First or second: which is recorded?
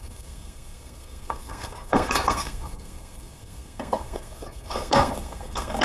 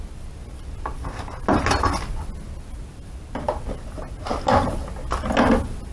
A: second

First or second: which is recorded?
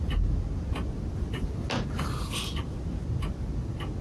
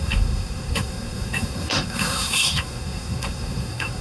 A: first